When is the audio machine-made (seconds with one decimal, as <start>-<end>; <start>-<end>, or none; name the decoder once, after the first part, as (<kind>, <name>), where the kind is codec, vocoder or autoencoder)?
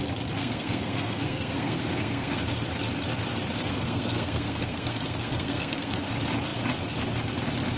0.4-2.4 (codec, SNAC); 3.7-6.0